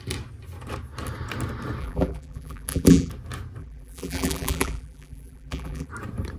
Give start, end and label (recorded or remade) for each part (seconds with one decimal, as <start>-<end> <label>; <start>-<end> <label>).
0.0-1.8 recorded; 1.8-3.1 remade; 3.1-3.6 recorded; 3.6-5.9 remade; 5.9-6.4 recorded